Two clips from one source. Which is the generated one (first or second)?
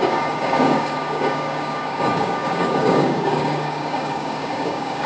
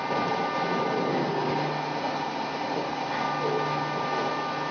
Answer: first